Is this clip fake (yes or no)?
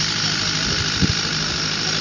no